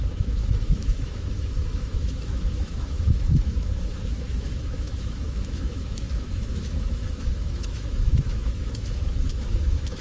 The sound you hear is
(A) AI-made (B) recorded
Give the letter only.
A